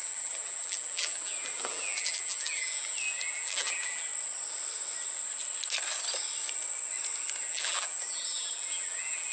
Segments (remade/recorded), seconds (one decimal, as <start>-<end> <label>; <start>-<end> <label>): 0.0-4.1 remade; 4.1-7.5 recorded; 7.5-9.3 remade

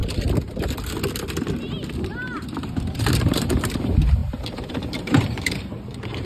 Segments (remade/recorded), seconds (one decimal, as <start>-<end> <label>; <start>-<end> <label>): 0.0-2.9 recorded; 2.9-6.2 remade

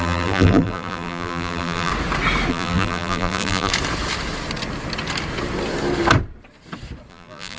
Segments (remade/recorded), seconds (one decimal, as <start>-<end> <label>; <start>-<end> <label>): 0.0-1.9 remade; 1.9-2.5 recorded; 2.5-3.7 remade; 3.7-7.1 recorded; 7.1-7.6 remade

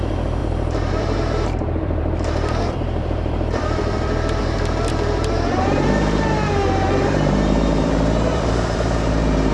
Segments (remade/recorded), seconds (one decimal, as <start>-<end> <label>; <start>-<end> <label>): 0.0-9.5 remade

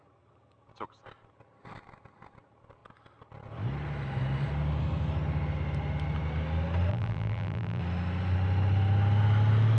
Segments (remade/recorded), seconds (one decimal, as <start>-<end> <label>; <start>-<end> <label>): 0.0-6.9 recorded; 6.9-7.8 remade; 7.8-9.8 recorded

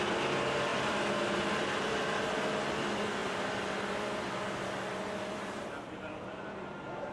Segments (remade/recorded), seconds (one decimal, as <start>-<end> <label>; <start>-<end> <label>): 0.0-7.1 remade